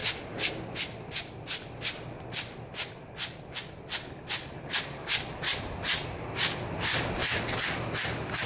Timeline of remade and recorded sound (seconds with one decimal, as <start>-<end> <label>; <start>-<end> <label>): 0.0-8.5 recorded